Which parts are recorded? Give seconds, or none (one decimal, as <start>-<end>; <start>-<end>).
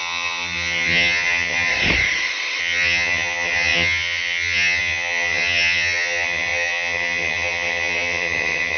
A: 1.7-2.6